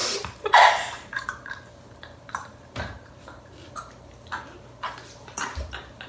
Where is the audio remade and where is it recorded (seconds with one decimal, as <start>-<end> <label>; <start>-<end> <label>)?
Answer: 0.0-3.7 remade; 3.7-6.1 recorded